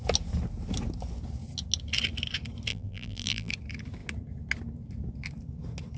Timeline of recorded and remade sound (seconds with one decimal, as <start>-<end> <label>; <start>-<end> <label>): 0.0-2.7 recorded; 2.7-3.5 remade; 3.5-6.0 recorded